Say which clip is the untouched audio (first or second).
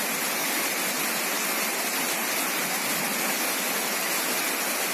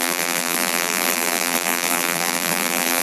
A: first